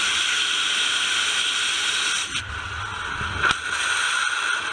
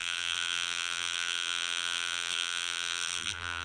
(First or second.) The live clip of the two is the first